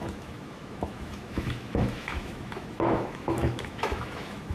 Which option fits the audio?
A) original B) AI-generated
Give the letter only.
B